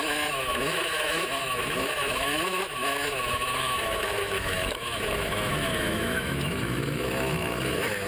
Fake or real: fake